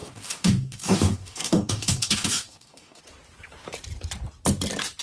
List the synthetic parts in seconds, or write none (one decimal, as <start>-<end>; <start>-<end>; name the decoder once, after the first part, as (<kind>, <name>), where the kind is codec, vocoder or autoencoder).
0.0-3.0 (codec, DAC)